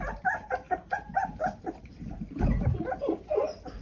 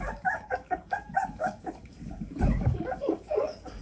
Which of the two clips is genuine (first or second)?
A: first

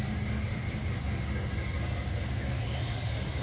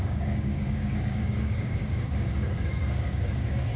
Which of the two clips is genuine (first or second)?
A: first